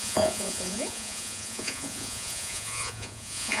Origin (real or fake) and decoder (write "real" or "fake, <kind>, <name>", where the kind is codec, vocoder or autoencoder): fake, vocoder, Vocos